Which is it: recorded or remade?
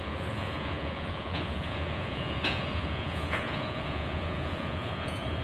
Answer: remade